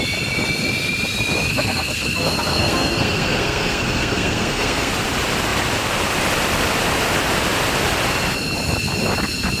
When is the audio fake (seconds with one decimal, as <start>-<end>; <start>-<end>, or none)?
1.5-4.9